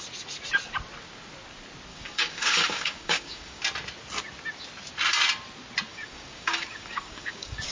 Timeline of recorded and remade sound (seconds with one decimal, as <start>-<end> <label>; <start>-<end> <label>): 0.0-1.9 recorded; 1.9-3.6 remade; 3.6-5.9 recorded; 5.9-7.7 remade